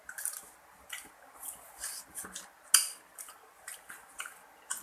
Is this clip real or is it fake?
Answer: real